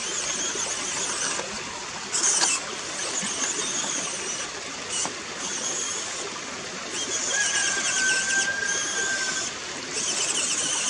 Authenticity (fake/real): real